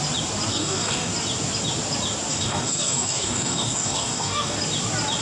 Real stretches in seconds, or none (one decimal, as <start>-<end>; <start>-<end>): 0.0-0.5; 1.1-2.3; 4.6-5.2